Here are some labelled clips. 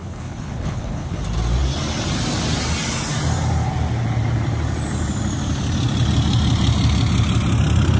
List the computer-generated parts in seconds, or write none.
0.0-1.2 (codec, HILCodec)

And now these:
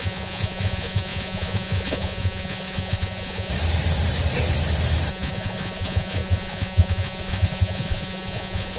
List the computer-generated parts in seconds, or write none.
0.0-3.5 (vocoder, Vocos); 5.1-8.8

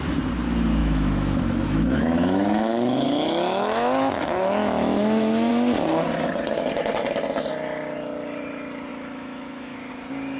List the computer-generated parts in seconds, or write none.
0.8-5.5 (autoencoder, DAC-VAE); 8.9-9.9

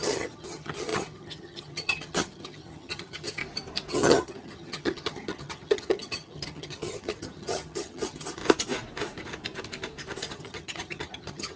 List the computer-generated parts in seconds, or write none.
0.0-3.4 (vocoder, HiFi-GAN); 3.9-8.4; 10.3-11.6

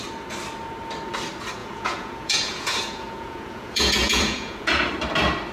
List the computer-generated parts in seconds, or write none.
1.6-4.9 (vocoder, Vocos)